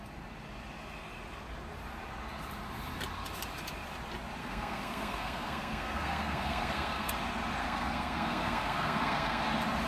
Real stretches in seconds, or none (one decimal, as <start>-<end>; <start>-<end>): 0.0-4.4; 7.1-7.6; 9.4-9.9